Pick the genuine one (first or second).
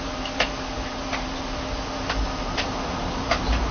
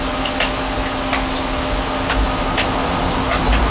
second